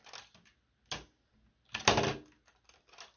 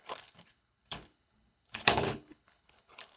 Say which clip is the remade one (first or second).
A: second